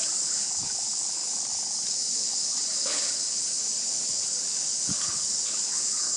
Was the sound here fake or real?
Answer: fake